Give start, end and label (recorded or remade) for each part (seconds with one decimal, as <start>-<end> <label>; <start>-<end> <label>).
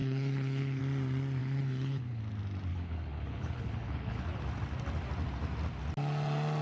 0.0-0.8 remade; 0.8-1.4 recorded; 1.4-2.2 remade; 2.2-2.7 recorded; 2.7-4.4 remade; 4.4-6.6 recorded